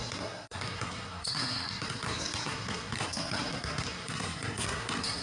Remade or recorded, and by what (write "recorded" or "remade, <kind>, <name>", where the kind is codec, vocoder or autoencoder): remade, codec, SNAC